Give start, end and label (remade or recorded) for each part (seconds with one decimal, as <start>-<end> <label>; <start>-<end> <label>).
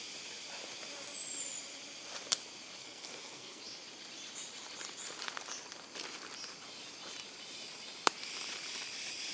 0.0-2.8 recorded; 2.8-3.6 remade; 3.6-9.3 recorded